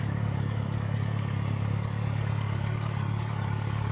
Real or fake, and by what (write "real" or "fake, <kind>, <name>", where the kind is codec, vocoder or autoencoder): fake, codec, DAC